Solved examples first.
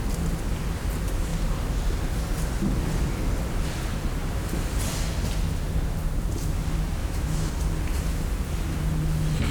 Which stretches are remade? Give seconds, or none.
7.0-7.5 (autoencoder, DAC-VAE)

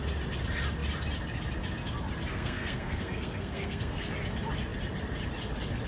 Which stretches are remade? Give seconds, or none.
2.3-4.1 (codec, SNAC)

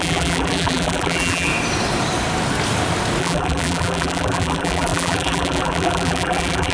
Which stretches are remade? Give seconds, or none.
0.0-1.5 (vocoder, BigVGAN v2); 3.2-6.7

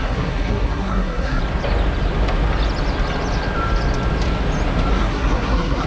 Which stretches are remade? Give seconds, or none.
0.0-1.4 (codec, SNAC); 4.9-5.9

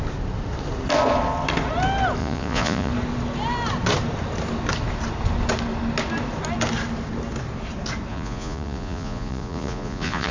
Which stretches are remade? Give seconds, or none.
2.2-2.9 (vocoder, Vocos); 8.1-10.3

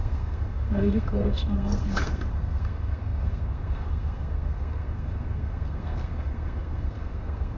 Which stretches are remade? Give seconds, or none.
0.0-7.6 (codec, SNAC)